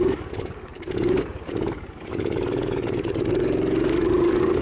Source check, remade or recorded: remade